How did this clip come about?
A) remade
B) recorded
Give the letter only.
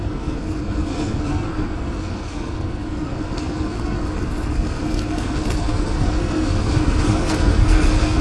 A